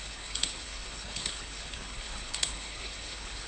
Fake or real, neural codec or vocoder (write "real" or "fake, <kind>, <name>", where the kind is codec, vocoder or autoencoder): fake, codec, HILCodec